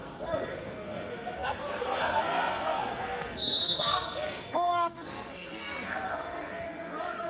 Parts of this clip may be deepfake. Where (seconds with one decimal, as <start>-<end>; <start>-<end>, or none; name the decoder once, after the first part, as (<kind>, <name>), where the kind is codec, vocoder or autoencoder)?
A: 0.0-7.3 (codec, SNAC)